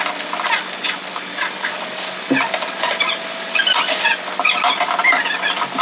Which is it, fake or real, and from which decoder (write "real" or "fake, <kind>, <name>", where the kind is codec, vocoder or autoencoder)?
real